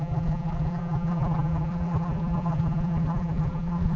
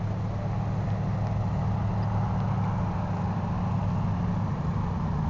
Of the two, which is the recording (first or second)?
second